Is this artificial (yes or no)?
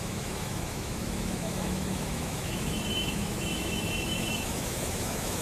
yes